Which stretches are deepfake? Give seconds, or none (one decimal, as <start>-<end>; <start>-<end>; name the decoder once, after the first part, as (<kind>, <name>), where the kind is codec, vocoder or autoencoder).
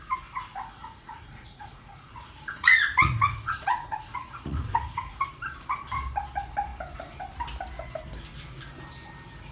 0.8-5.2 (vocoder, Vocos)